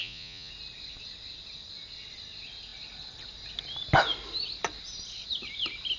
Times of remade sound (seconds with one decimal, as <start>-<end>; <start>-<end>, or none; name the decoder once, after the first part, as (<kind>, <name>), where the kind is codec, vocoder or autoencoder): 0.0-0.5 (vocoder, Vocos)